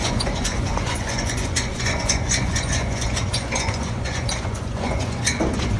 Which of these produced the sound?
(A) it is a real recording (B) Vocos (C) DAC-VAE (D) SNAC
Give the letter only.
B